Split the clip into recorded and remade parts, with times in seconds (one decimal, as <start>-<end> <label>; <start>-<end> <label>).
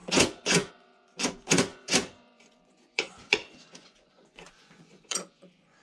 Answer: 0.0-5.8 remade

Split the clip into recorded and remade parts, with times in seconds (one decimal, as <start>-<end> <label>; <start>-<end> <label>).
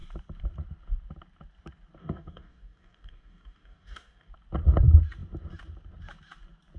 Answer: 0.0-2.0 recorded; 2.0-4.3 remade; 4.3-6.8 recorded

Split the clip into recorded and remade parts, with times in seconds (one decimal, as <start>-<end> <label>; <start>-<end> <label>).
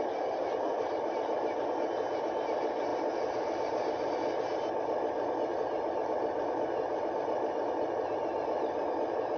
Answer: 0.0-9.4 recorded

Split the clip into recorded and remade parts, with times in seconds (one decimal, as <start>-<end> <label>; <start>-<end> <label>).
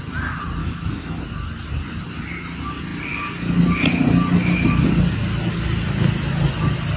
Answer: 0.0-0.6 recorded; 0.6-1.2 remade; 1.2-7.0 recorded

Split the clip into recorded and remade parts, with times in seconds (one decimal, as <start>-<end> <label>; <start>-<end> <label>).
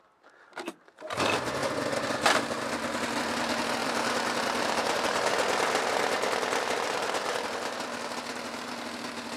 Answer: 0.0-3.8 recorded; 3.8-5.2 remade; 5.2-9.4 recorded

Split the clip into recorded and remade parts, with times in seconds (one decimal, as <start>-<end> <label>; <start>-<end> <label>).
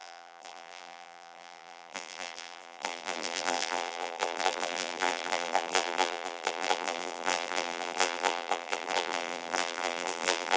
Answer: 0.0-10.6 remade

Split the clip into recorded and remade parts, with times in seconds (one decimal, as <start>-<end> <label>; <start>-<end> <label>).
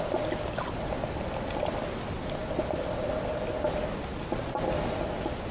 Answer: 0.0-5.5 recorded